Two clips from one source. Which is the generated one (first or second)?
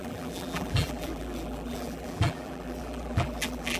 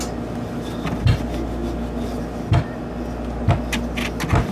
first